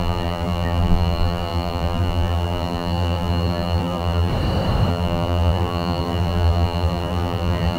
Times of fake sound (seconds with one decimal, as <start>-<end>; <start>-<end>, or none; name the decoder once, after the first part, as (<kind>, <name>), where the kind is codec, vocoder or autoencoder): 0.0-4.3 (vocoder, BigVGAN v2); 4.9-7.8